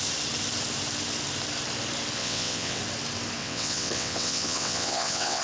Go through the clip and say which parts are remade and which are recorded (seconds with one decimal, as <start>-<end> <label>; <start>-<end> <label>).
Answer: 0.0-2.2 recorded; 2.2-2.8 remade; 2.8-3.4 recorded; 3.4-5.4 remade

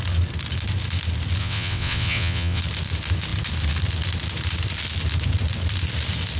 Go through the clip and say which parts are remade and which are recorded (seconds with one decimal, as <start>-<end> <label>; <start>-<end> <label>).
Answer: 0.0-1.4 recorded; 1.4-2.6 remade; 2.6-6.4 recorded

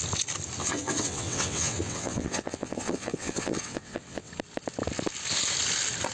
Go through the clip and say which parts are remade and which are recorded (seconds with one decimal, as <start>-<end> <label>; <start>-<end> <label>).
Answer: 0.0-0.6 recorded; 0.6-4.3 remade; 4.3-6.1 recorded

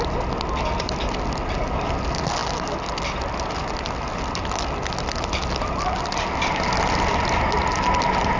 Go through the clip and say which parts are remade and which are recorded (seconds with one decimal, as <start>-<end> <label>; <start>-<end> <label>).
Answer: 0.0-8.4 recorded

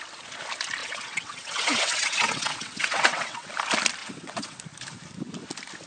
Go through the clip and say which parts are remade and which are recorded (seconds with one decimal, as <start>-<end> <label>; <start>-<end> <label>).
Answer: 0.0-0.8 recorded; 0.8-3.5 remade; 3.5-4.0 recorded; 4.0-4.6 remade; 4.6-5.9 recorded